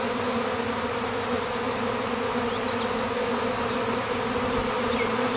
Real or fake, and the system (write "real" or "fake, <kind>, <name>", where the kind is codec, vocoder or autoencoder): real